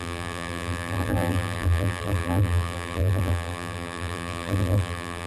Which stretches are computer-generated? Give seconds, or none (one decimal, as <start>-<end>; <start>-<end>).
0.0-5.3